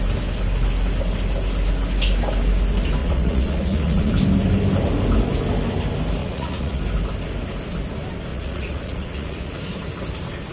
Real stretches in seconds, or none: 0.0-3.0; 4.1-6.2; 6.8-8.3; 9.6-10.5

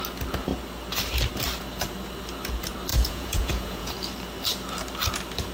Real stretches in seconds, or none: 0.0-2.9; 3.9-5.5

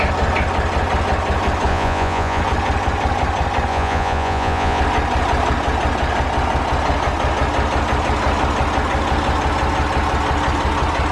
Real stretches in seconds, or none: 0.0-1.7; 2.4-3.7; 4.8-11.1

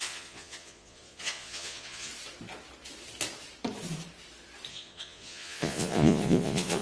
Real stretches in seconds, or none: 2.1-4.7